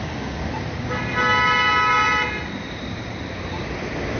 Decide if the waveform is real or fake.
real